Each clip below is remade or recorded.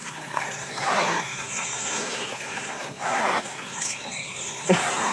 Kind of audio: remade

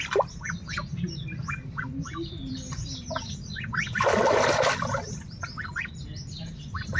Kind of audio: recorded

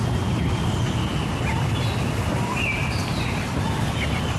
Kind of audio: recorded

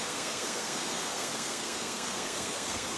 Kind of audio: remade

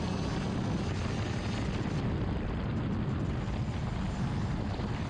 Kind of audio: recorded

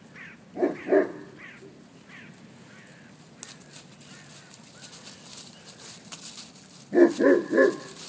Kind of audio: recorded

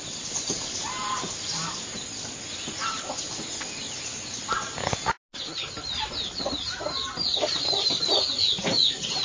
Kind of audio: recorded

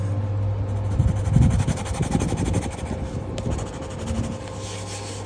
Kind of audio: recorded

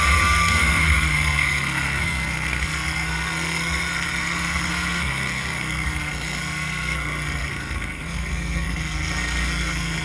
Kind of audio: remade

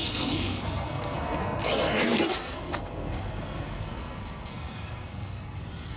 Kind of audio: remade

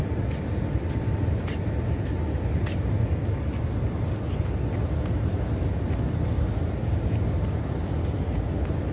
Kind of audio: recorded